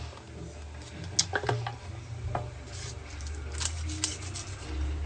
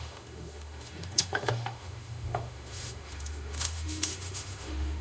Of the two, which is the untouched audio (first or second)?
first